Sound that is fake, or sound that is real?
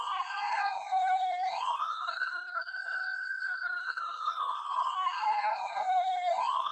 fake